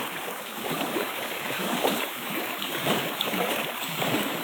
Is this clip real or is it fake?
fake